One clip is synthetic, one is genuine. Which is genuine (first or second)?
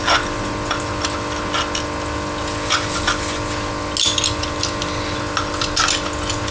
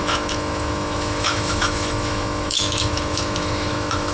first